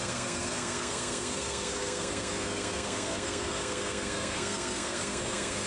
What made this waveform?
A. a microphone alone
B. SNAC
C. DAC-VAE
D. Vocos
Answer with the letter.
B